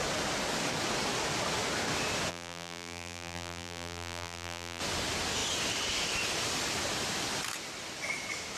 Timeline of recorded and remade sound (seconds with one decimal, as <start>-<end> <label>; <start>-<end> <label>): 0.0-2.3 recorded; 2.3-4.8 remade; 4.8-8.6 recorded